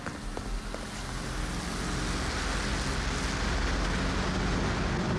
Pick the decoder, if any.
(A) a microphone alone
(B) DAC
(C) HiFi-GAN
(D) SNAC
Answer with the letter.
A